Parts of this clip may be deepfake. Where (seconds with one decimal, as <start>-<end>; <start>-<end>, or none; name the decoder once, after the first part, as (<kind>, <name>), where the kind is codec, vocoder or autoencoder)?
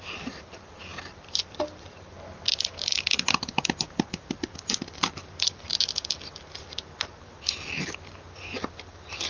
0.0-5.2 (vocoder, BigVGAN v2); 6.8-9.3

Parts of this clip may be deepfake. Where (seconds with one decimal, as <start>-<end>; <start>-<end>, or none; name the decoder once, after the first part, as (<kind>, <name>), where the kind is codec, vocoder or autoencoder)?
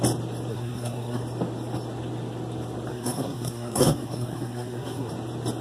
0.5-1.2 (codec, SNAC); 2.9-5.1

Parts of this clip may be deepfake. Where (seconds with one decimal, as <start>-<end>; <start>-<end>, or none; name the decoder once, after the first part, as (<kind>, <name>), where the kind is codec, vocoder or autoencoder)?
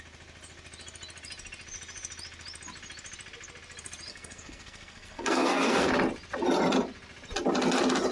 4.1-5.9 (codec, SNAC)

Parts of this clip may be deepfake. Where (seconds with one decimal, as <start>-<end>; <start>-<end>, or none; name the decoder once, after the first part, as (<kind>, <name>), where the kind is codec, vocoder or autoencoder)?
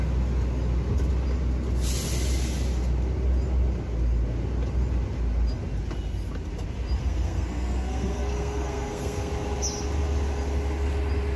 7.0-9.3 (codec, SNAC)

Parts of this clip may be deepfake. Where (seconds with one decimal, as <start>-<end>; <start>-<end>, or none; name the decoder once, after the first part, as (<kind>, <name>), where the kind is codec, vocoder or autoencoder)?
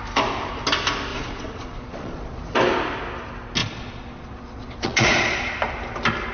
1.1-2.4 (vocoder, Vocos); 3.6-5.5